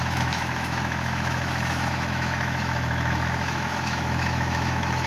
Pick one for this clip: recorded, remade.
remade